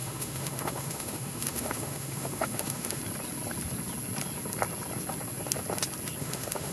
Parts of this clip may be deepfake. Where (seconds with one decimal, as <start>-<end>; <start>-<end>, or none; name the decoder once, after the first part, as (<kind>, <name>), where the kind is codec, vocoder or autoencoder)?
0.0-3.0 (autoencoder, DAC-VAE); 6.2-6.7